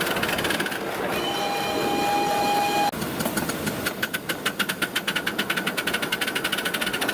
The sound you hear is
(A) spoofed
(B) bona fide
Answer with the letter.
B